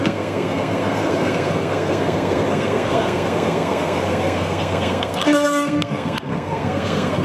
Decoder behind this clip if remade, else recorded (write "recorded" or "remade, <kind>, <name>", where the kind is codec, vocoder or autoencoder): remade, codec, SNAC